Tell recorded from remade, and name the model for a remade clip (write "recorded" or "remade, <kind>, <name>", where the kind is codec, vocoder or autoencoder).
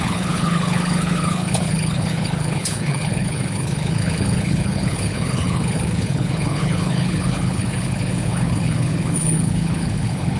remade, codec, HILCodec